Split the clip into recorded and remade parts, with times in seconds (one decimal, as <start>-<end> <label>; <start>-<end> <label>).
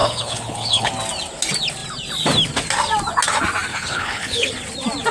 0.0-0.9 remade; 0.9-3.7 recorded; 3.7-4.5 remade; 4.5-5.1 recorded